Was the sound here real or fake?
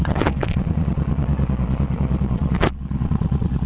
fake